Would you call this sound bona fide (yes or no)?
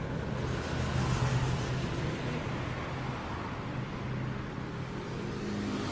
yes